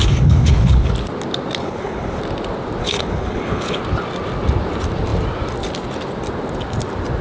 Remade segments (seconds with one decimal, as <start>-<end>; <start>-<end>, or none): 0.0-0.9; 1.6-2.2; 2.8-3.8